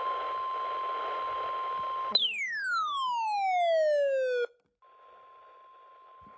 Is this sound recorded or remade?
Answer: recorded